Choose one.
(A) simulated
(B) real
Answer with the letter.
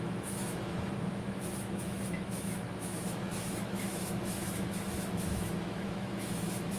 A